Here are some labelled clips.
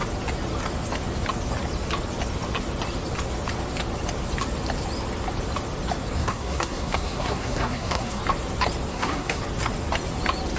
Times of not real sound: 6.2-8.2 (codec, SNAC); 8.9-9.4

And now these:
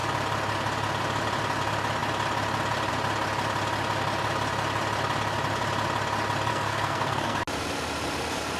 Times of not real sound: 6.5-7.4 (codec, SNAC)

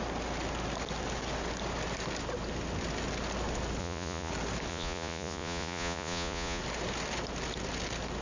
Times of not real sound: 3.8-4.3 (vocoder, Vocos); 4.7-6.6

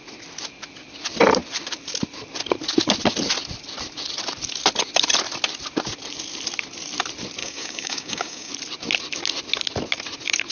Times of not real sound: 7.4-8.5 (codec, DAC)

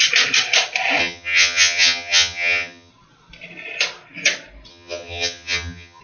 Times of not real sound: 1.0-2.9 (vocoder, HiFi-GAN); 4.7-6.0

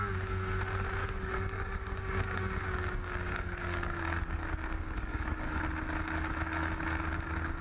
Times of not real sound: 1.0-5.6 (codec, DAC)

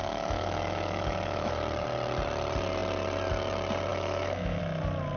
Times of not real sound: 0.0-1.5 (autoencoder, DAC-VAE); 3.9-4.6

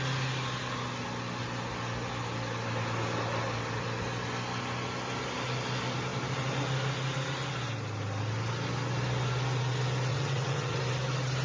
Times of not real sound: 10.1-10.8 (vocoder, WaveNeXt)